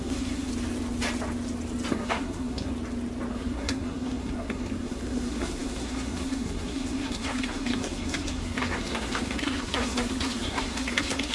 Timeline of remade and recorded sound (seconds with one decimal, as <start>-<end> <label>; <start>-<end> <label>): 0.0-0.5 remade; 0.5-1.9 recorded; 1.9-2.7 remade; 2.7-3.3 recorded; 3.3-11.3 remade